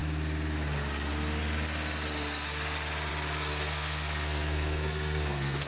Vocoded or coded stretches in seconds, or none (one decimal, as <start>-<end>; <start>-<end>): 3.5-5.7